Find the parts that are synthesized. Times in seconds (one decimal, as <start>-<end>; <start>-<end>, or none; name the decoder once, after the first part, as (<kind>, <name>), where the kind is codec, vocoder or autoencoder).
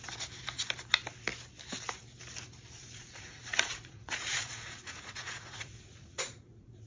2.8-6.9 (vocoder, Vocos)